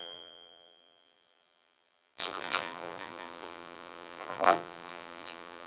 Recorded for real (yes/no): no